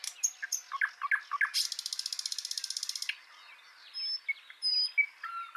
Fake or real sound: real